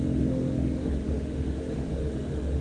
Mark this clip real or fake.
fake